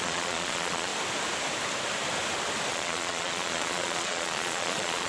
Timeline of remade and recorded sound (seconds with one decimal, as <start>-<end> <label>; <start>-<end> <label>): 0.0-0.9 remade; 0.9-2.7 recorded; 2.7-5.1 remade